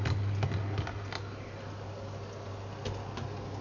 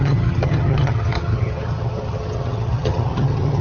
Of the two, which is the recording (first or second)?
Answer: first